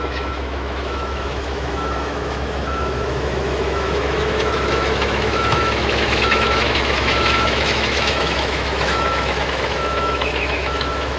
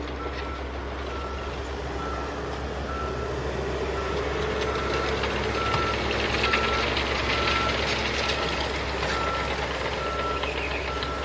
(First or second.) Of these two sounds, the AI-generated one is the first